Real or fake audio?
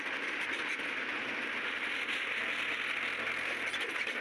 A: real